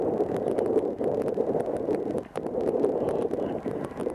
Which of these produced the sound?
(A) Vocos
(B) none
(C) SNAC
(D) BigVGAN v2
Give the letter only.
D